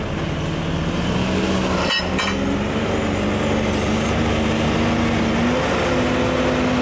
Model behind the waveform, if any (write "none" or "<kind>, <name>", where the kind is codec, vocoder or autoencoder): none